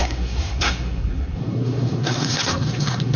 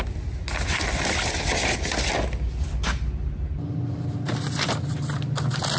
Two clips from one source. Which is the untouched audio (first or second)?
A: second